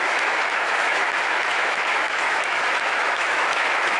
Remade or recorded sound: remade